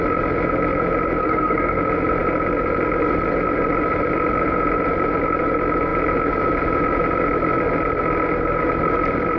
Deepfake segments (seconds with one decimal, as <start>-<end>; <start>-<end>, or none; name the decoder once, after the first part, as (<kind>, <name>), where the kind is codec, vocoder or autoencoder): 1.2-1.8 (codec, SNAC)